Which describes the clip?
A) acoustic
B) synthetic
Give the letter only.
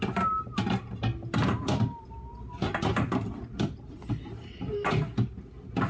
A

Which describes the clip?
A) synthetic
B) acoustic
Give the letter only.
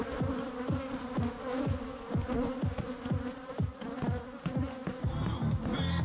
B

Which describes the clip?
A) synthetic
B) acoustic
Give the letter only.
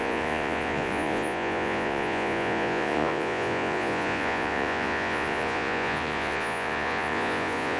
A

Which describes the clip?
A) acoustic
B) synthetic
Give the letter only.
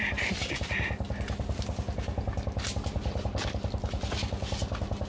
A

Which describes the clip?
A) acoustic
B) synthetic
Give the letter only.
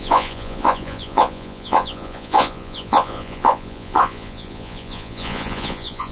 B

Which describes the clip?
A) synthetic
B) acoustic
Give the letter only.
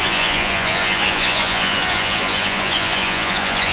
A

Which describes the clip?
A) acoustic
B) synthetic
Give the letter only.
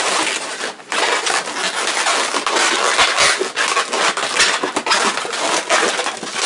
A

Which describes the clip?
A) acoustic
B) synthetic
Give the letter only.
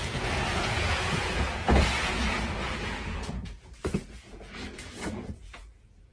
B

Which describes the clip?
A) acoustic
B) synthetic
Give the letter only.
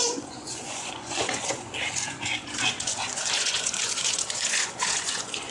B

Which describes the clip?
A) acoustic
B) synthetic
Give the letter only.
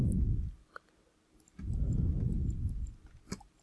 A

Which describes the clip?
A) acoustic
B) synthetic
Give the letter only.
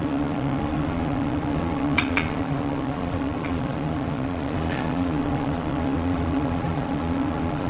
B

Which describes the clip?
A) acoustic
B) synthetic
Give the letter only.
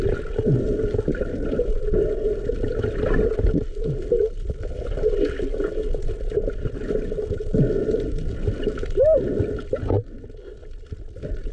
A